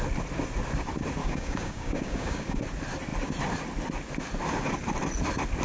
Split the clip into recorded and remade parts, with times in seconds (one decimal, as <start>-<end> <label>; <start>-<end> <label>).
0.0-1.2 recorded; 1.2-2.6 remade; 2.6-5.6 recorded